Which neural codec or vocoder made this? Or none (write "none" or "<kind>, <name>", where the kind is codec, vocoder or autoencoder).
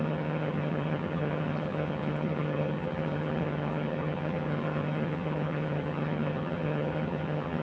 vocoder, HiFi-GAN